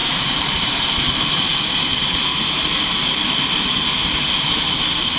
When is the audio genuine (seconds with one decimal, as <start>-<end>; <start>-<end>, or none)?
0.9-5.2